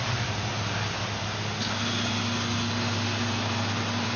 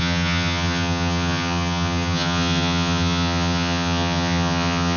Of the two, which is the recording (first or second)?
first